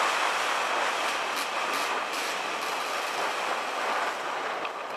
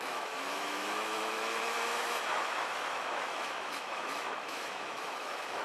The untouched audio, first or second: first